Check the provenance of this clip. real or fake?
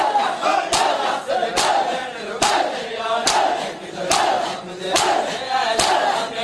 real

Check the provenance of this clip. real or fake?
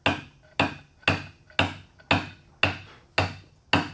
real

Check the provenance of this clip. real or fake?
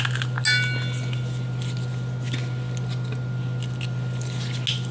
real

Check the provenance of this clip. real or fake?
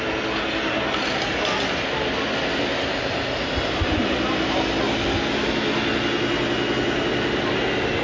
real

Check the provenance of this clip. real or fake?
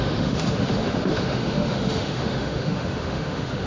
fake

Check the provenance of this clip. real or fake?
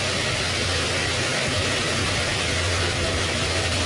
real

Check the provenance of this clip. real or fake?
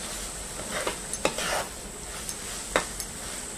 real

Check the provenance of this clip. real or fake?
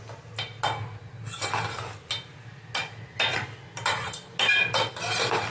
real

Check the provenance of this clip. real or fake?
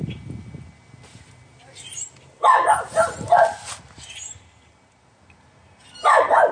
real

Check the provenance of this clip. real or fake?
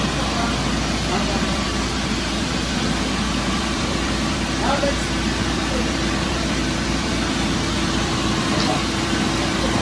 fake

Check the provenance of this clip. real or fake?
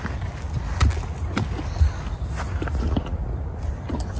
real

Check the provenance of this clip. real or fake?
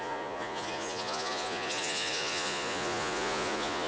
fake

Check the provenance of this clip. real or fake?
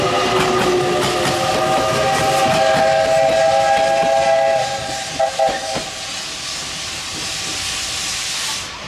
real